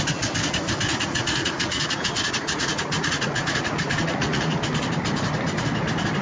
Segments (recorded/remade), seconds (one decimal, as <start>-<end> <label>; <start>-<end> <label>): 0.0-0.9 recorded; 0.9-4.6 remade; 4.6-6.2 recorded